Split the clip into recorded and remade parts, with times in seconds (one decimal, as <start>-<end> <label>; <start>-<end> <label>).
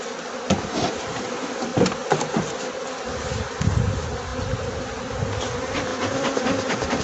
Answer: 0.0-7.0 recorded